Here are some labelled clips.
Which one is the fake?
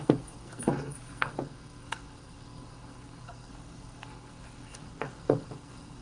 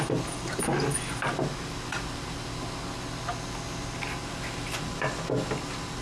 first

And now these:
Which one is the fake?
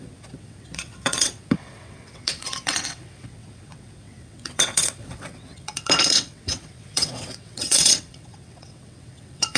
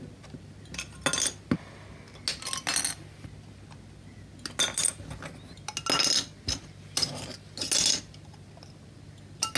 first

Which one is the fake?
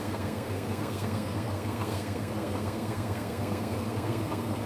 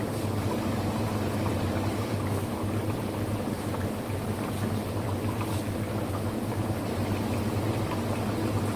first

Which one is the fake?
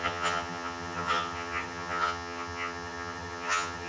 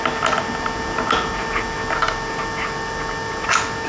first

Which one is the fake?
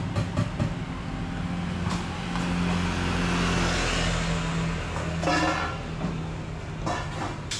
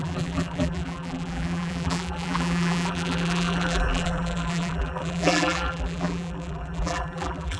second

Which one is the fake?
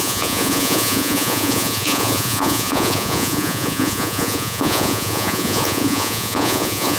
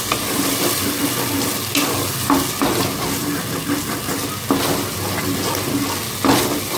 first